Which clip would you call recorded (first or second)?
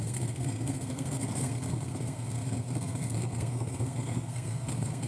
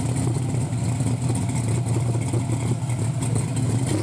second